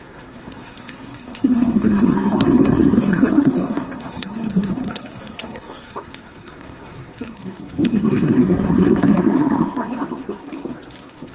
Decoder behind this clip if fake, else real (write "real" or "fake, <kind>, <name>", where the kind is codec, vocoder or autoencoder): fake, codec, SNAC